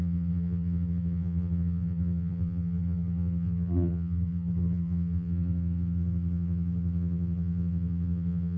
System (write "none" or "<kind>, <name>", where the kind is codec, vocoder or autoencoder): vocoder, BigVGAN v2